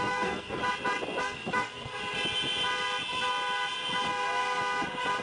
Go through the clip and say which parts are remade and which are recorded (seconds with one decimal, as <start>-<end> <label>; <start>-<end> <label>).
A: 0.0-0.6 remade; 0.6-1.2 recorded; 1.2-2.0 remade; 2.0-5.2 recorded